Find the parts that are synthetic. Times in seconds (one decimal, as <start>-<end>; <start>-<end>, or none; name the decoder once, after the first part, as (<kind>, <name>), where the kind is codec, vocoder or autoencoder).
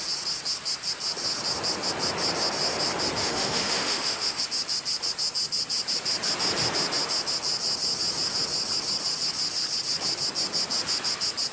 3.2-4.4 (autoencoder, DAC-VAE)